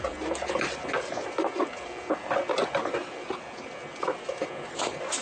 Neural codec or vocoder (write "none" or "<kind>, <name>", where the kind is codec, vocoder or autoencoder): none